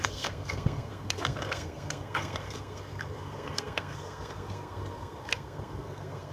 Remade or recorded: remade